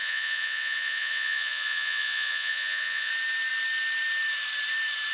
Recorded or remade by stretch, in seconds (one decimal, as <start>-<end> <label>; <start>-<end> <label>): 0.0-3.1 remade; 3.1-5.1 recorded